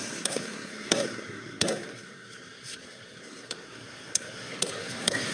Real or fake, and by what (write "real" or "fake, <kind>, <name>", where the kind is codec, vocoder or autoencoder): fake, codec, SNAC